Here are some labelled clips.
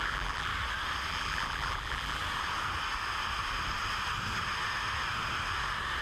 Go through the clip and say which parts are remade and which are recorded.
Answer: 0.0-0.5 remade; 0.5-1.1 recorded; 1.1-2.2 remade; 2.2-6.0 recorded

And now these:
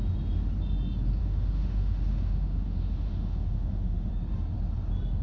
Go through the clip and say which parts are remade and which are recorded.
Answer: 0.0-1.2 recorded; 1.2-4.1 remade; 4.1-5.2 recorded

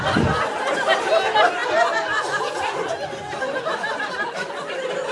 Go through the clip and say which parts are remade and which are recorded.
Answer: 0.0-5.1 recorded